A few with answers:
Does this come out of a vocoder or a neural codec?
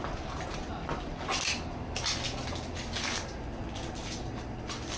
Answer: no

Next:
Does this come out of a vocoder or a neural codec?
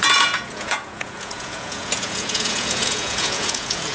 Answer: yes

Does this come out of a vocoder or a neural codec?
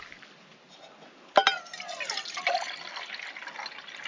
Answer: no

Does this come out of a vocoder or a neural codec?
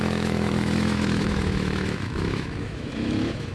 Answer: yes